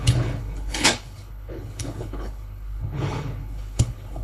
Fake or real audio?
fake